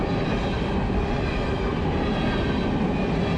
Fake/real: real